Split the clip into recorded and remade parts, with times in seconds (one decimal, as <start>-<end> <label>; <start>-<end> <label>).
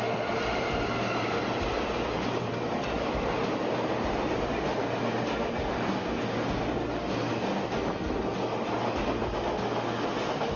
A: 0.0-1.7 recorded; 1.7-5.3 remade; 5.3-10.6 recorded